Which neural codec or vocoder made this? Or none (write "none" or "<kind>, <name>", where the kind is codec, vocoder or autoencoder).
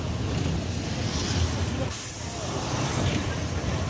none